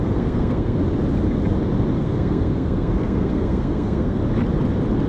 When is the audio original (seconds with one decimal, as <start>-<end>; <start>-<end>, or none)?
0.8-2.0; 4.2-5.1